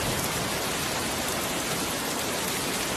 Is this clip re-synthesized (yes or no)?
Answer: no